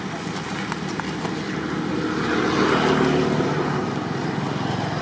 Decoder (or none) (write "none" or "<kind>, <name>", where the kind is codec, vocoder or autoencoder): none